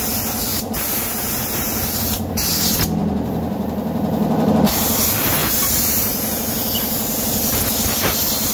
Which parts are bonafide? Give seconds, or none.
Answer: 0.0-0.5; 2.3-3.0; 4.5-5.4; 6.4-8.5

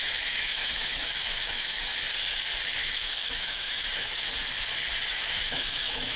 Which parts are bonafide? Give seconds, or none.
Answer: 1.9-2.8; 4.3-5.1

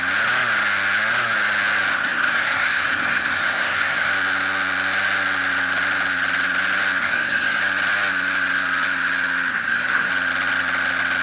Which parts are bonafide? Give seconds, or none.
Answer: 0.0-1.9; 4.1-7.0; 7.6-9.5; 10.1-11.2

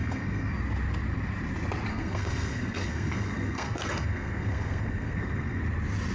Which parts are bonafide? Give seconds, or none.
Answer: 0.5-1.9; 5.6-6.1